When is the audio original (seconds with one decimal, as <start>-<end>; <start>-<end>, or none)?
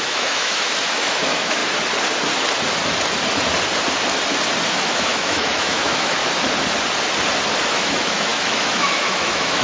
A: 1.6-4.7; 6.2-7.7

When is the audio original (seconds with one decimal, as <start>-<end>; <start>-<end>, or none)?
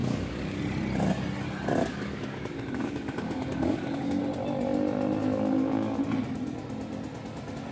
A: 0.6-1.8; 4.2-5.2; 6.0-7.7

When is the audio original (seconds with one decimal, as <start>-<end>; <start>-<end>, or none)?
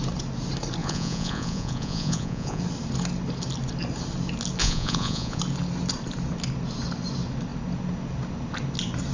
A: 0.0-0.8; 2.6-4.6; 5.4-9.1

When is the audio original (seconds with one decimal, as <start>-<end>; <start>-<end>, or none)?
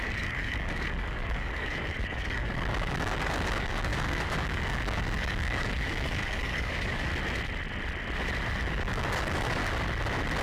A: 7.1-8.7; 9.6-10.4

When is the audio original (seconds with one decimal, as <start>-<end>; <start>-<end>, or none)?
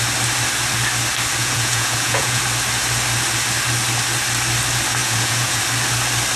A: 0.0-1.4; 2.4-5.0; 5.6-6.4